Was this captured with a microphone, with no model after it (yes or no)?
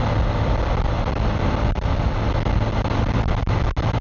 yes